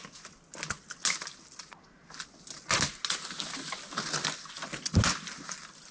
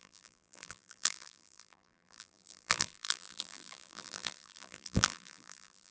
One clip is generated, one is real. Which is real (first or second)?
first